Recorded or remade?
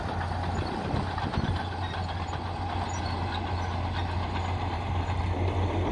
recorded